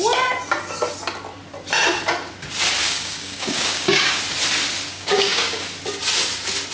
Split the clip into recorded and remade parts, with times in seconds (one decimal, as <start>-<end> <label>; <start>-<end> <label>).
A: 0.0-2.8 recorded; 2.8-4.2 remade; 4.2-4.9 recorded; 4.9-5.6 remade; 5.6-6.7 recorded